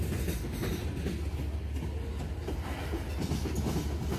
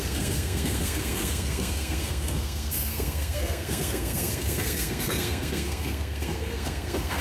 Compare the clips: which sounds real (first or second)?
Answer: first